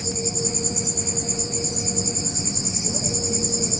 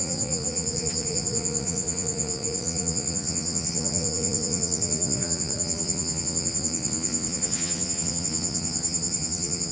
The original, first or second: first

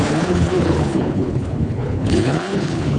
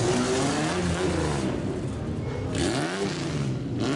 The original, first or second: second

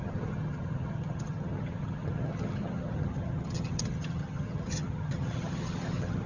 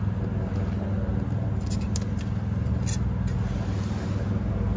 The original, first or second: second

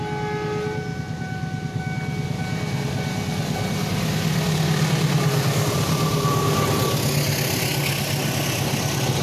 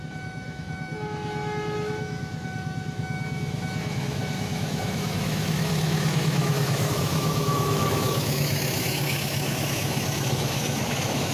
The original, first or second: first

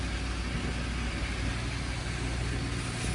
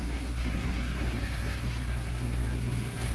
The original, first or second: first